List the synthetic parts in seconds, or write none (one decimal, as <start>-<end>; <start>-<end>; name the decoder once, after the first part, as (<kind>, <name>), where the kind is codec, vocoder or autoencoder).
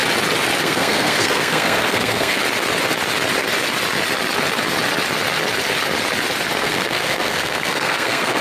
0.6-2.4 (codec, SNAC); 6.6-8.4